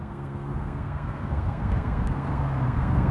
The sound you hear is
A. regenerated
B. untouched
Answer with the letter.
A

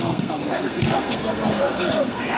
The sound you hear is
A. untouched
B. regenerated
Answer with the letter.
B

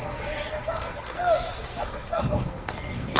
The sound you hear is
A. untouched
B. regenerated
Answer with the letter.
B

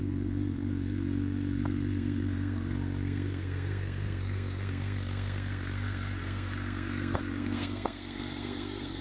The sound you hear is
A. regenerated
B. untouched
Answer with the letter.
A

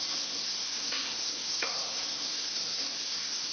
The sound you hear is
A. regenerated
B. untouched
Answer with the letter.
A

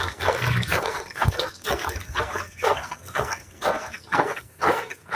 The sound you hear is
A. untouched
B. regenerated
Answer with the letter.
B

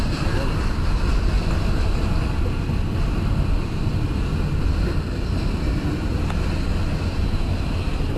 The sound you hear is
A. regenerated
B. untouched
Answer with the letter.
B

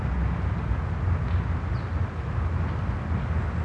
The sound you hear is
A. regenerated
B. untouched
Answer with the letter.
B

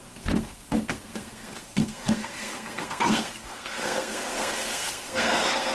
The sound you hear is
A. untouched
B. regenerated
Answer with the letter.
B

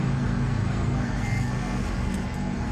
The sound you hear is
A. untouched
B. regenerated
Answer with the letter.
B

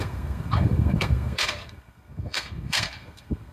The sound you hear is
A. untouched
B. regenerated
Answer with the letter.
B